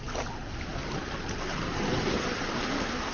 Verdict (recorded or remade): recorded